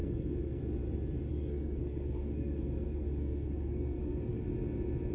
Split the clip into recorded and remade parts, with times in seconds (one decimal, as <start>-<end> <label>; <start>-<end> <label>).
0.0-0.6 remade; 0.6-1.3 recorded; 1.3-4.4 remade; 4.4-5.1 recorded